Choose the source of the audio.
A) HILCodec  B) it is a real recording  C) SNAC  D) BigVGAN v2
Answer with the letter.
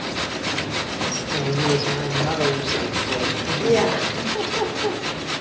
B